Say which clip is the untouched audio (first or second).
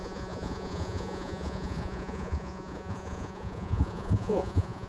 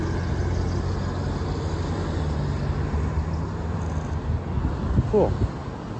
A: second